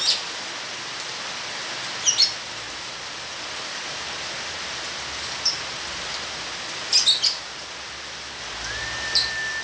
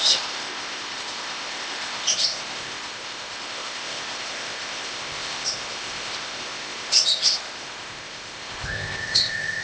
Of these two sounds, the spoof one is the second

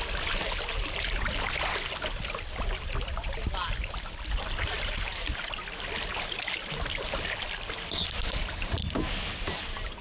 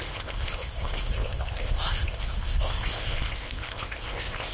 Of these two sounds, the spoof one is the second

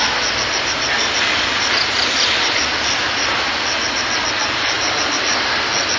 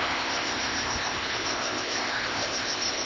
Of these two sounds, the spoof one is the second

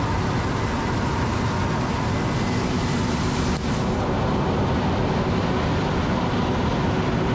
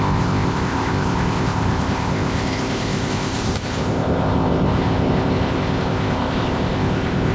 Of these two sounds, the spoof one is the second